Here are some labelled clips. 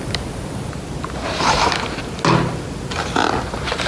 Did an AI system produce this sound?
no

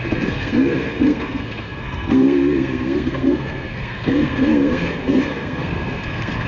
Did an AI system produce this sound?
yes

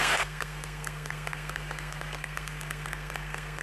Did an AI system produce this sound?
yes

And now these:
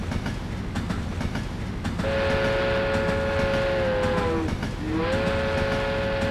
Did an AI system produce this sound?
no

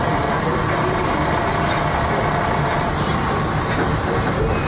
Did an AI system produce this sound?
no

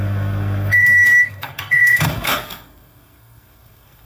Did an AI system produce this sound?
yes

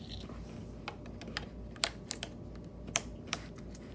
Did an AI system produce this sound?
no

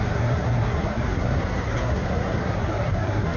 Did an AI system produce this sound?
yes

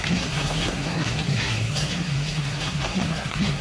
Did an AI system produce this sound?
yes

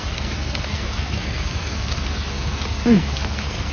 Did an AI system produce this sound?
yes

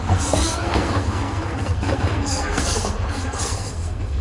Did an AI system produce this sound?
yes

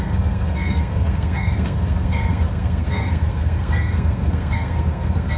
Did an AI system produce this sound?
yes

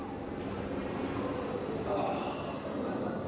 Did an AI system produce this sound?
no